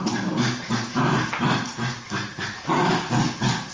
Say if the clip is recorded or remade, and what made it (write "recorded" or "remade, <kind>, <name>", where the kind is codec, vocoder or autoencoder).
remade, vocoder, BigVGAN v2